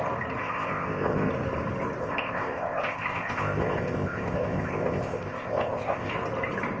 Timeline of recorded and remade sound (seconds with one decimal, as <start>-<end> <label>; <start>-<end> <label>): 0.0-0.4 recorded; 0.4-1.3 remade; 1.3-2.0 recorded; 2.0-6.1 remade; 6.1-6.8 recorded